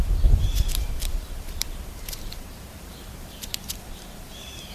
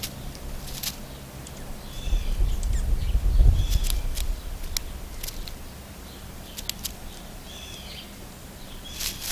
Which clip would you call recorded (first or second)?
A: second